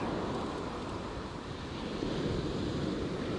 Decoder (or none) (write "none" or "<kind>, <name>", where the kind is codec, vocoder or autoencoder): none